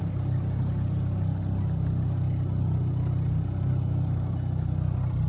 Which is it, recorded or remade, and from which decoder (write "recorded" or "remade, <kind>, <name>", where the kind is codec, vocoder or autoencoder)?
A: recorded